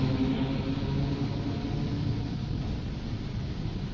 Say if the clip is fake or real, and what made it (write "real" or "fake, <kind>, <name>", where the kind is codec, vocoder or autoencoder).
real